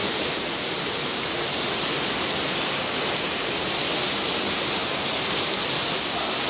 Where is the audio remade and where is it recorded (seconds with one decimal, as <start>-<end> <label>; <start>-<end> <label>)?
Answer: 0.0-3.9 remade; 3.9-6.5 recorded